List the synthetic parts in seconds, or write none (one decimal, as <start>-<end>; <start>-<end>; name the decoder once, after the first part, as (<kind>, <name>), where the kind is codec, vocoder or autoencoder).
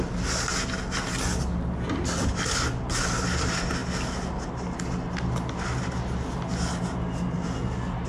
none